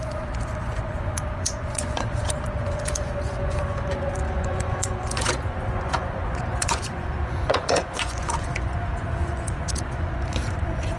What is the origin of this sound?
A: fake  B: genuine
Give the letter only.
A